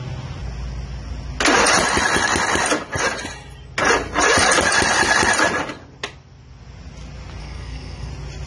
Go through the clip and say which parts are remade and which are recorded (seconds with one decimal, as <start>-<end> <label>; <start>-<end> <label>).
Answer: 0.0-7.4 recorded; 7.4-8.1 remade; 8.1-8.5 recorded